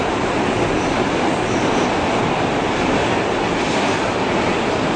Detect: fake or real real